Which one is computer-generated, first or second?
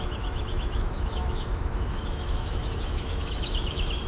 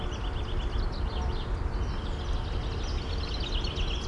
first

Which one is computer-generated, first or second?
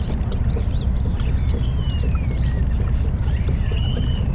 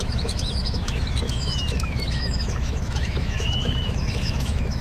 second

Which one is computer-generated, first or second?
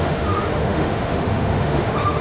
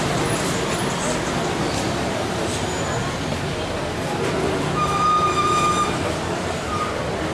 first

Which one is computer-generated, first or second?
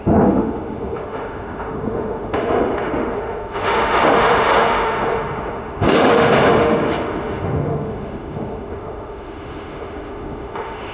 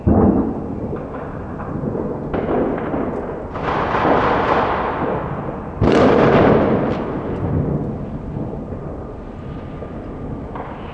first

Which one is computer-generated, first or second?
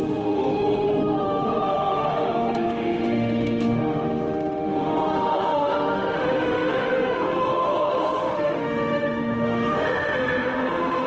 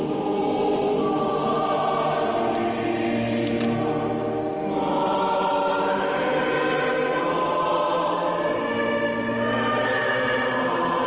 first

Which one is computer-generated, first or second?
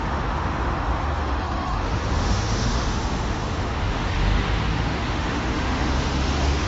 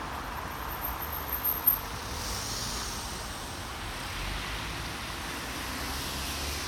first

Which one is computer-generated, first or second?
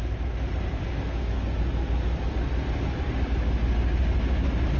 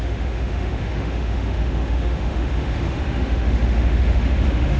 second